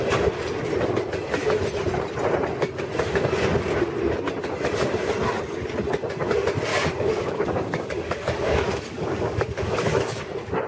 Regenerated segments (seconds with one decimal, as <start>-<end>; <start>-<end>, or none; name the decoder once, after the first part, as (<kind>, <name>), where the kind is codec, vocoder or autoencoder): 6.7-10.2 (codec, DAC)